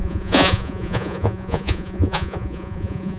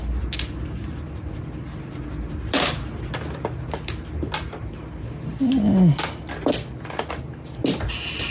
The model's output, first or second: first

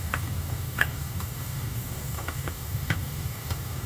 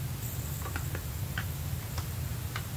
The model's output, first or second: first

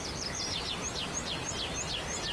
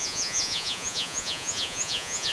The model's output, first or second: second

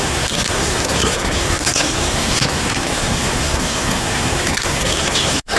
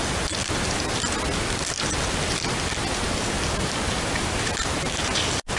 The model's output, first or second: first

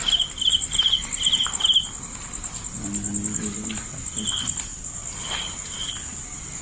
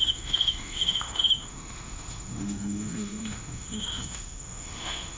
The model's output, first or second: second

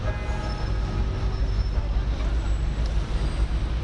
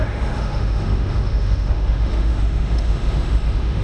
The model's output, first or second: second